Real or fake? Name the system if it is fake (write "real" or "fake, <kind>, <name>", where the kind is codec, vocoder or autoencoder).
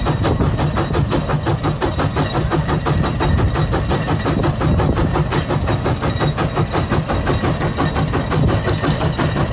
real